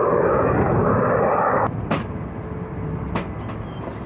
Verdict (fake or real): real